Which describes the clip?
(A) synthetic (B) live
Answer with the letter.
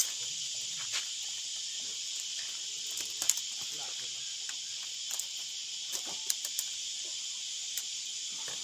B